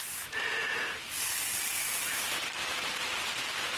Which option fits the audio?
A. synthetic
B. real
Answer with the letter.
B